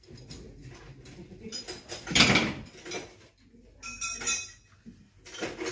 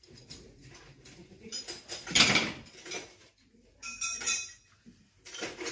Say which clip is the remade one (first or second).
second